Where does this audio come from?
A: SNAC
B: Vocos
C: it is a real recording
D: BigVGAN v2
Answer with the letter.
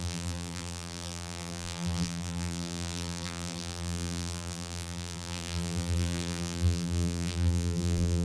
D